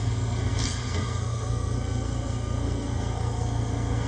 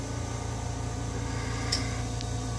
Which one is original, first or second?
second